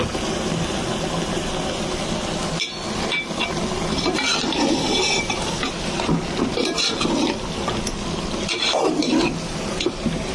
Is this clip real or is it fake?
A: real